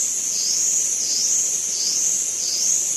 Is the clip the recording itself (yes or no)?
yes